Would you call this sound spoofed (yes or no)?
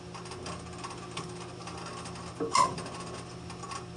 no